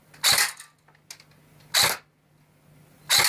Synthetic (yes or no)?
no